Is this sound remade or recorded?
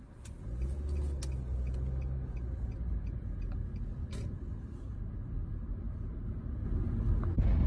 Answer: recorded